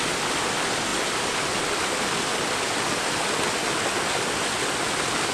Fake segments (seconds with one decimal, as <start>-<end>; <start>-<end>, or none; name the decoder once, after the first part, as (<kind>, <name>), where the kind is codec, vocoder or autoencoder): none